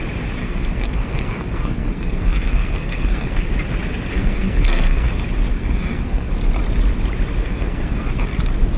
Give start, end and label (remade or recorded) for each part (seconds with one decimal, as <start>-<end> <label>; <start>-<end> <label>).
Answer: 0.0-0.4 recorded; 0.4-3.5 remade; 3.5-4.1 recorded; 4.1-5.1 remade; 5.1-5.5 recorded; 5.5-6.3 remade; 6.3-7.4 recorded; 7.4-8.2 remade; 8.2-8.8 recorded